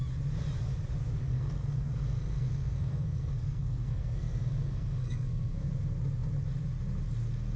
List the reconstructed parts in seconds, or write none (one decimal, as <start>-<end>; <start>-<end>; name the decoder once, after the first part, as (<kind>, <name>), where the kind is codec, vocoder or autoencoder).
1.2-5.7 (codec, SNAC)

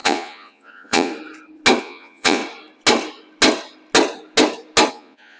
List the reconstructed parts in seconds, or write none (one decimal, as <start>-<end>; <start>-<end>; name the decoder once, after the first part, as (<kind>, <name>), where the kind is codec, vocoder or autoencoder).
0.0-1.1 (vocoder, Vocos); 1.8-2.4; 4.9-5.4

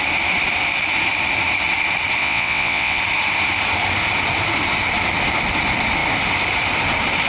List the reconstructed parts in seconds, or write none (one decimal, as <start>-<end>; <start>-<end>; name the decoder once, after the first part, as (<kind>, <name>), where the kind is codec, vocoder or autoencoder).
2.2-3.0 (vocoder, WaveNeXt)

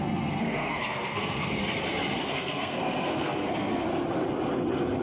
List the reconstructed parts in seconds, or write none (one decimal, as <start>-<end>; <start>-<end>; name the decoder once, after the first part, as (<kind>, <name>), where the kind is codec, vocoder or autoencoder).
0.0-1.6 (codec, SNAC); 2.2-3.9

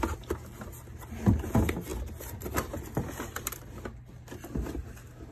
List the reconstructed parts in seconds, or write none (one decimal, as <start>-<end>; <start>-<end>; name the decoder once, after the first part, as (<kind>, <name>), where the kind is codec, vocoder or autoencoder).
none

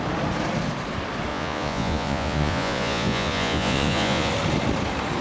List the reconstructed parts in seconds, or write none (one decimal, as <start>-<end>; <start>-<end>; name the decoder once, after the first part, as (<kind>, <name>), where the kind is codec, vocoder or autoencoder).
1.3-4.3 (vocoder, Vocos)

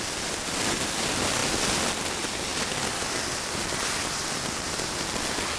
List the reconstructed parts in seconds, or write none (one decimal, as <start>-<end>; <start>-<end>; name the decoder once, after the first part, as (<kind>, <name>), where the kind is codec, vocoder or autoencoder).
none